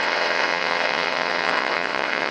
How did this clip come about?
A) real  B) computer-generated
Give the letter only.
B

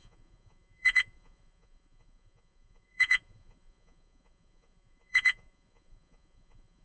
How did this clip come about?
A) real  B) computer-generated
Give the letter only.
B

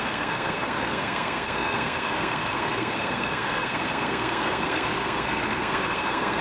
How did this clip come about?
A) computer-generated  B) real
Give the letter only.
A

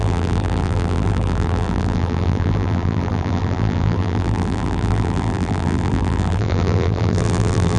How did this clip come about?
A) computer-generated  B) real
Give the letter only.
A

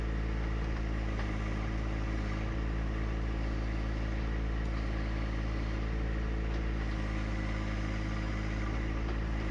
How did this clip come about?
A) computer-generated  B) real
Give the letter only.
B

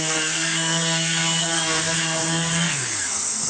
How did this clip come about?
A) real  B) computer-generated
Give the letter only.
B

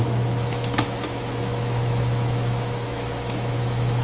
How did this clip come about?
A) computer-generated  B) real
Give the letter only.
A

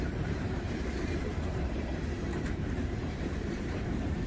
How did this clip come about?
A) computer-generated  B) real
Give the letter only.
A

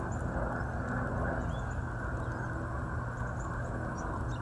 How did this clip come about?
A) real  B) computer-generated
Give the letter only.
A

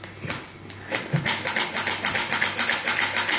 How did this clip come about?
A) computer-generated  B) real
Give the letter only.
B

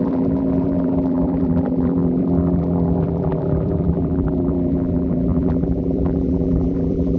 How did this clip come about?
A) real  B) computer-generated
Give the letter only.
B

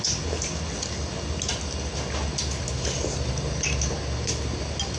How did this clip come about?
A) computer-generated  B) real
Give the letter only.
B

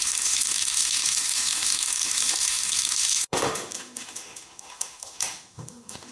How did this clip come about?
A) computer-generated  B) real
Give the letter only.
A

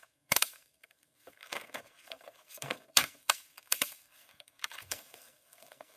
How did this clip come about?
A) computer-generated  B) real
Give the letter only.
A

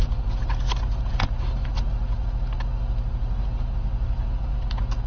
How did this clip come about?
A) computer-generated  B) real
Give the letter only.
B